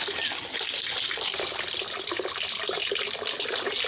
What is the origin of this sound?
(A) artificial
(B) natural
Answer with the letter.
B